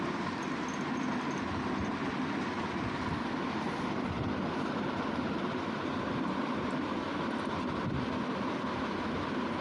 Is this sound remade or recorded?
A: recorded